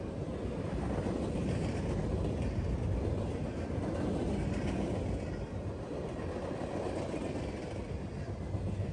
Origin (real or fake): real